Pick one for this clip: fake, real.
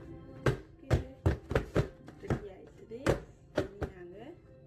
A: real